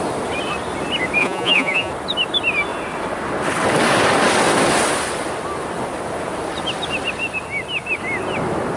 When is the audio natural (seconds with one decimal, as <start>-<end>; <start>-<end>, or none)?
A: 0.0-1.2; 1.9-8.8